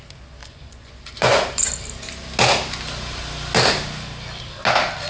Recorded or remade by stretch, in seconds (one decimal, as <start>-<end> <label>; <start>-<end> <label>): 0.0-0.4 recorded; 0.4-1.7 remade; 1.7-5.1 recorded